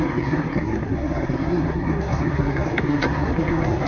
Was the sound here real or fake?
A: fake